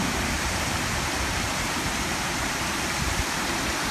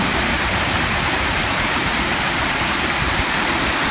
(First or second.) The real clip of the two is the second